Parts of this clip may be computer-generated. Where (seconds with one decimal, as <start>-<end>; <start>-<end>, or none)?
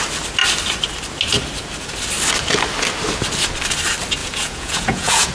4.2-5.3